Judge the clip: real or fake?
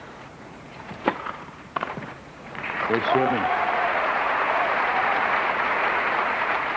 fake